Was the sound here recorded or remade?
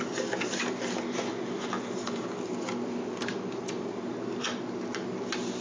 recorded